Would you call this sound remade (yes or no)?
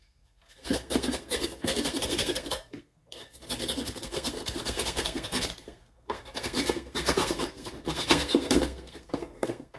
yes